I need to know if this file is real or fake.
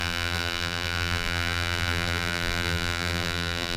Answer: fake